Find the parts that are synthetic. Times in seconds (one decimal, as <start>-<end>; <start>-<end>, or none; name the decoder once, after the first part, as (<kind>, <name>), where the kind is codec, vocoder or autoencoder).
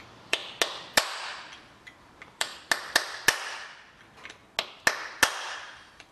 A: 0.0-0.4 (vocoder, BigVGAN v2); 1.7-2.5; 5.4-6.1